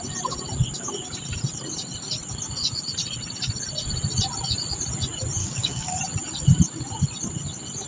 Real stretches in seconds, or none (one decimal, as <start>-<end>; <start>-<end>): 0.0-5.4; 6.0-7.9